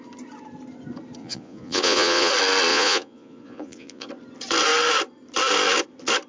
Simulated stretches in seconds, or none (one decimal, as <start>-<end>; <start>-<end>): 1.2-2.3; 2.7-4.1